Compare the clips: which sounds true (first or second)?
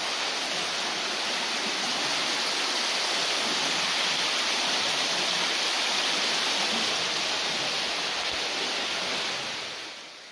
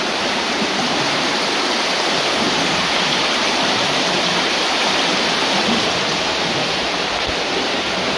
first